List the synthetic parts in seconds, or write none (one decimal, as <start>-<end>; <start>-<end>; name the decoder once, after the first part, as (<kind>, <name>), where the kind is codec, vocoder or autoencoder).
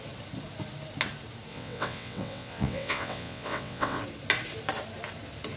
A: 1.5-4.0 (vocoder, WaveNeXt)